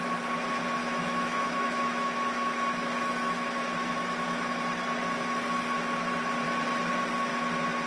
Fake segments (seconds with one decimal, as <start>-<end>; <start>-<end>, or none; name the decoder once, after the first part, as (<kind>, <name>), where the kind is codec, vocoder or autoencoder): 0.8-4.5 (autoencoder, DAC-VAE)